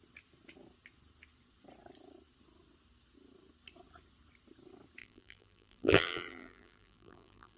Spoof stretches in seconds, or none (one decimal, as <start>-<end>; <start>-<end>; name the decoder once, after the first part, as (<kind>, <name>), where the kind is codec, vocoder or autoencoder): 5.0-7.6 (vocoder, BigVGAN v2)